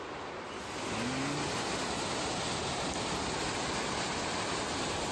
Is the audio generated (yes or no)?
no